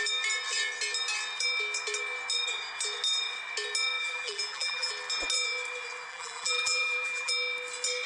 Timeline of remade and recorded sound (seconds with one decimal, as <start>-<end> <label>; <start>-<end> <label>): 0.0-4.0 recorded; 4.0-4.9 remade; 4.9-6.1 recorded; 6.1-7.3 remade; 7.3-8.1 recorded